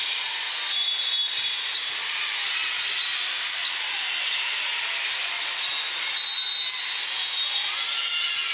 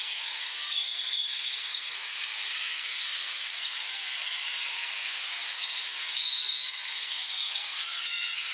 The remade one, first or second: second